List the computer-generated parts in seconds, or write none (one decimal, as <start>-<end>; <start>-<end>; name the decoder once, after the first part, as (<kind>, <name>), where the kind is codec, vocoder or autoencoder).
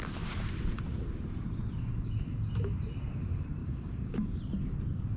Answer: 3.6-4.4 (codec, DAC)